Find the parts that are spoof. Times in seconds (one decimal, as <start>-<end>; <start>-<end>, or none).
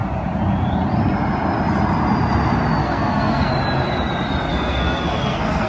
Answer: 2.8-3.5; 4.5-5.7